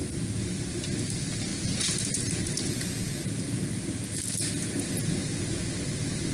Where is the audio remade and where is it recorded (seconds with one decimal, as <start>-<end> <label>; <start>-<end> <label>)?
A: 0.0-1.5 recorded; 1.5-3.6 remade; 3.6-5.0 recorded; 5.0-5.6 remade; 5.6-6.3 recorded

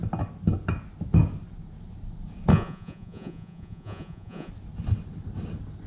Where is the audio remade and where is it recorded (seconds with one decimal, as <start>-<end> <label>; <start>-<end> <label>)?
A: 0.0-2.5 recorded; 2.5-4.5 remade; 4.5-5.9 recorded

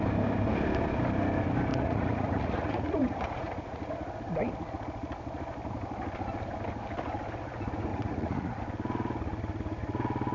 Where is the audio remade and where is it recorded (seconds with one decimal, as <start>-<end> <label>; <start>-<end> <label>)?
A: 0.0-1.7 recorded; 1.7-3.9 remade; 3.9-7.9 recorded; 7.9-8.6 remade; 8.6-10.3 recorded

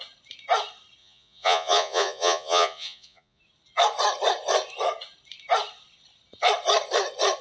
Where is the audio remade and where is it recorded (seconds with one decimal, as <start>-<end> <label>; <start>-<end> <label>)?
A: 0.0-1.0 recorded; 1.0-3.4 remade; 3.4-7.4 recorded

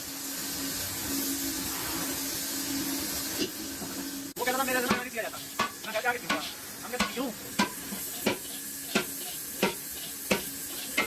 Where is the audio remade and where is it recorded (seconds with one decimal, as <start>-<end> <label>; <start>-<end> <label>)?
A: 0.0-11.1 recorded